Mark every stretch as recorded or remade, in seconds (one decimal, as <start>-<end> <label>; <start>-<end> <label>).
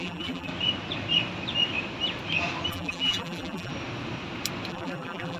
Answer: 0.0-0.5 remade; 0.5-2.7 recorded; 2.7-3.7 remade; 3.7-4.7 recorded; 4.7-5.4 remade